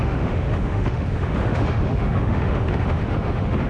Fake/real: fake